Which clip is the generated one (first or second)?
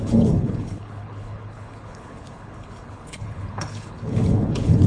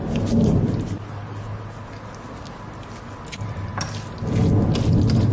first